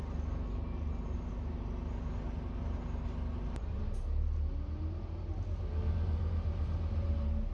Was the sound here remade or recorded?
recorded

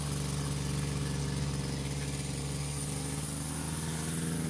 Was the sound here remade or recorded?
recorded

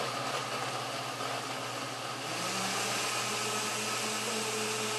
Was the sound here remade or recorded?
recorded